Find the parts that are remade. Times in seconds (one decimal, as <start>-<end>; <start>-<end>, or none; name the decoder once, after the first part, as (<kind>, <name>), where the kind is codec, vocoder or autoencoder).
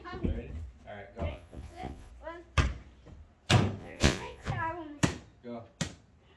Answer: 1.3-2.1 (vocoder, Vocos); 3.8-4.5